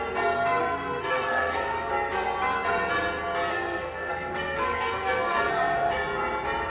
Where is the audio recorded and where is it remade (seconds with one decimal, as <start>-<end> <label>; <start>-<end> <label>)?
0.0-0.6 recorded; 0.6-1.9 remade; 1.9-3.5 recorded; 3.5-5.9 remade; 5.9-6.7 recorded